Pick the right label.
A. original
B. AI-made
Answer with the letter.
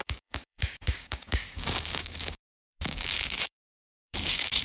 B